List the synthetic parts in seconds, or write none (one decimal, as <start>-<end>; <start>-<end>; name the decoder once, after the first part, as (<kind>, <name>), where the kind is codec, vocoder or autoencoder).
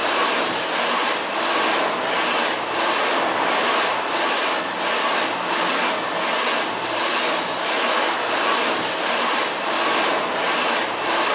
0.0-0.7 (vocoder, BigVGAN v2); 8.5-11.3